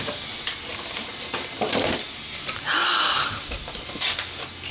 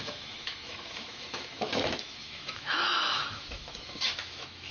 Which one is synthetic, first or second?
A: second